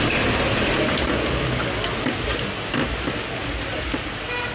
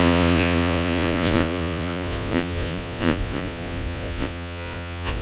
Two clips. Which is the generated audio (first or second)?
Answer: second